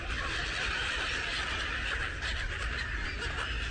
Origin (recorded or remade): recorded